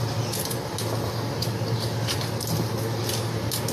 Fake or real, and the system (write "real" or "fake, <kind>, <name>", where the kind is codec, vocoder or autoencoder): real